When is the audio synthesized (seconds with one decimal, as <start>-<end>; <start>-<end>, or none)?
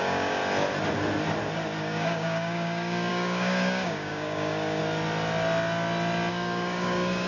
0.0-0.4; 1.8-4.8; 6.3-7.3